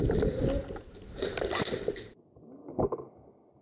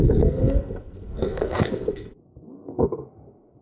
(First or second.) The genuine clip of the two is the first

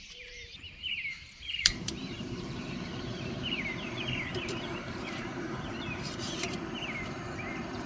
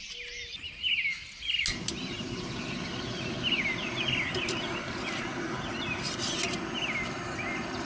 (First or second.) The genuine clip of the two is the second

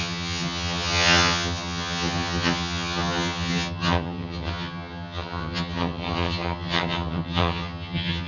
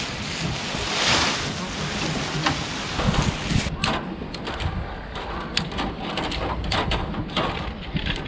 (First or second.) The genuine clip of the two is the second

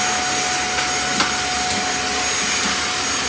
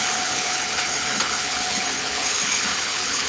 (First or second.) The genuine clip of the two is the first